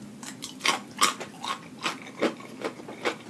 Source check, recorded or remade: recorded